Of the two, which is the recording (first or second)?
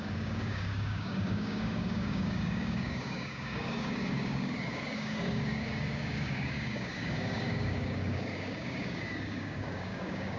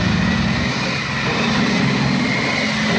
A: second